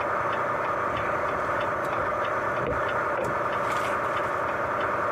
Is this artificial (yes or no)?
no